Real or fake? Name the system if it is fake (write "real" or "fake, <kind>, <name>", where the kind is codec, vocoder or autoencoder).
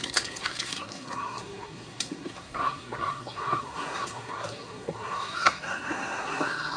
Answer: fake, codec, SNAC